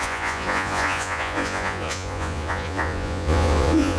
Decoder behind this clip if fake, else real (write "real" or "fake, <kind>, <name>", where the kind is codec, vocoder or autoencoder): fake, vocoder, Vocos